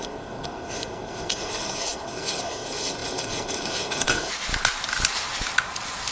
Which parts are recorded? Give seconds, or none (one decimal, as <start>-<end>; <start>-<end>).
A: 4.3-6.1